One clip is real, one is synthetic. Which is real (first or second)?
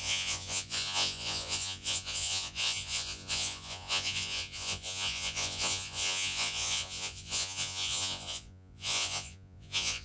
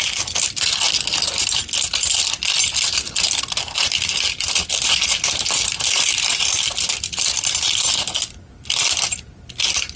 second